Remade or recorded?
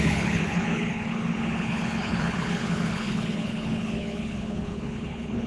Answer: remade